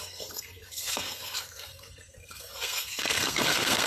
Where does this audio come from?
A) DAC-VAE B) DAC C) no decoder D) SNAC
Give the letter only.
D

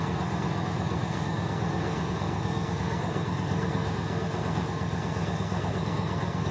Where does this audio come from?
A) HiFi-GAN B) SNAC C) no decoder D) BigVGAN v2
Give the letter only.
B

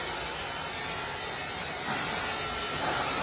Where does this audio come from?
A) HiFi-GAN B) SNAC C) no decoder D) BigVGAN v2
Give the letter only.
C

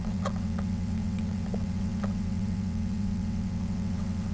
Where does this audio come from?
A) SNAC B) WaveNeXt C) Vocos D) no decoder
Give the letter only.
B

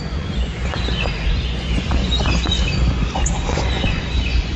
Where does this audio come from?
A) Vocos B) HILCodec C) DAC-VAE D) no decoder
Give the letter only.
A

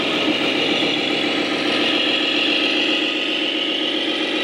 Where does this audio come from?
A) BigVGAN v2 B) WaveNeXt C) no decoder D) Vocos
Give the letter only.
C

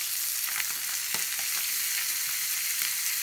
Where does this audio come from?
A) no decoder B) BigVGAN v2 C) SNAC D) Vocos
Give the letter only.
A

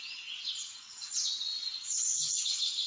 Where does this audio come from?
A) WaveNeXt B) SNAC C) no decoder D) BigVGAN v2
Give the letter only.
A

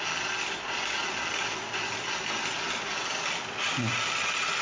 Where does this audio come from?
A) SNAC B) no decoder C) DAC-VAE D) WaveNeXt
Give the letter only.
B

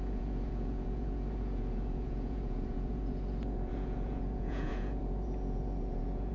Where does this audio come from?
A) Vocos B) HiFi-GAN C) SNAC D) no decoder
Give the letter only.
A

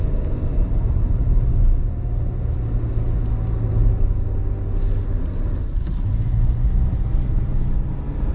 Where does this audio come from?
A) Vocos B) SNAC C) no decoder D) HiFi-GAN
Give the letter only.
C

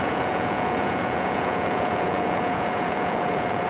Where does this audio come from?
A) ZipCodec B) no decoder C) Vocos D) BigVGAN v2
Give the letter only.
C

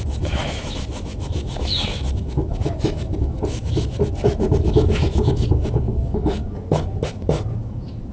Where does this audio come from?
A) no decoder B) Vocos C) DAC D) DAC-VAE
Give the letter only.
D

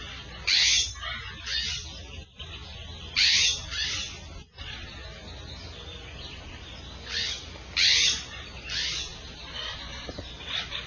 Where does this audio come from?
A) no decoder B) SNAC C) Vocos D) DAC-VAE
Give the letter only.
A